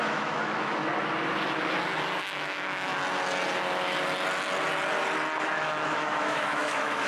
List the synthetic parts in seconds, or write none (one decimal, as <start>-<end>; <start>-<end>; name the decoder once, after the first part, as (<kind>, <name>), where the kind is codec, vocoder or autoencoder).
0.0-0.8 (autoencoder, DAC-VAE); 2.2-2.9; 5.4-7.1